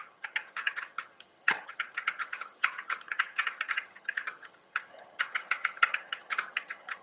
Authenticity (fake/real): fake